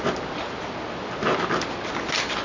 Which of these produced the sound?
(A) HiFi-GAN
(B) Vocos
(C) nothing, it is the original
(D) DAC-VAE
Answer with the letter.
C